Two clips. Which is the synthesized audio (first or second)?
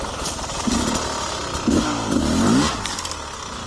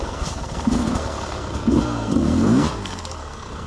second